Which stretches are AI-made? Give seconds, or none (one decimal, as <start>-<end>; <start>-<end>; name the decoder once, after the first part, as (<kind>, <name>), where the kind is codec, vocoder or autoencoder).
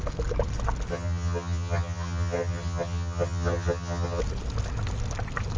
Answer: 0.9-4.2 (vocoder, HiFi-GAN)